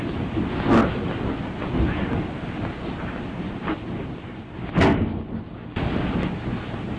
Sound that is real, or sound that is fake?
real